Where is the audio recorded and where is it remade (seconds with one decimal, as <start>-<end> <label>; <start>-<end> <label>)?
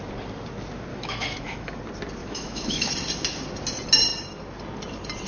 0.0-0.9 recorded; 0.9-1.8 remade; 1.8-2.2 recorded; 2.2-2.9 remade; 2.9-5.3 recorded